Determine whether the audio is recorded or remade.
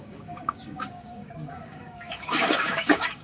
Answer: remade